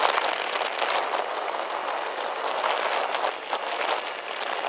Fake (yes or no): no